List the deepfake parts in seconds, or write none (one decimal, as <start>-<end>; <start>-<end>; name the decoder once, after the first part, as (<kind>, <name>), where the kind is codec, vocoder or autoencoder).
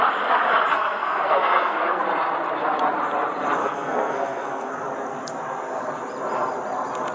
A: 0.7-2.0 (codec, SNAC); 3.6-4.7